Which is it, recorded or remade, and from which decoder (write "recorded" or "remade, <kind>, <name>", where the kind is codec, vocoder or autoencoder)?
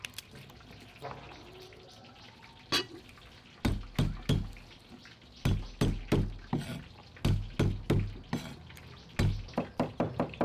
recorded